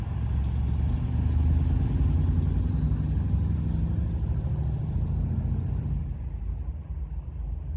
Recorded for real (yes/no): yes